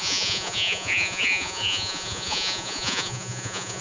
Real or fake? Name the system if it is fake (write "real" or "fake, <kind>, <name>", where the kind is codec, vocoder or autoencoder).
fake, vocoder, Vocos